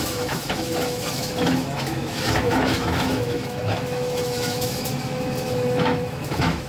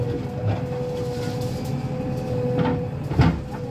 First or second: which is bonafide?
second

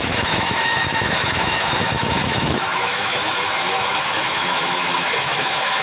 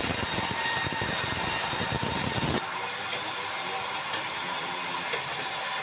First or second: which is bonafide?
second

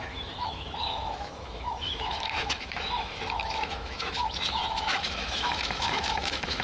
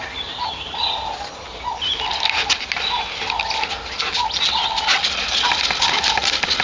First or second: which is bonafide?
second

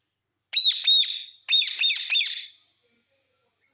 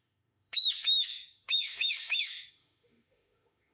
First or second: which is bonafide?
first